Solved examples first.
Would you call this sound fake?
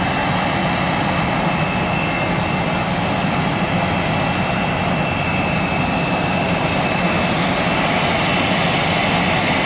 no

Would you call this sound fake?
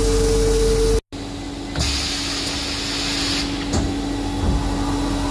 no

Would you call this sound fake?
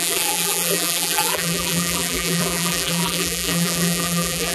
yes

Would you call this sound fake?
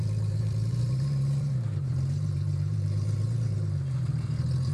yes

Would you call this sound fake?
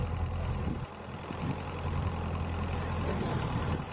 no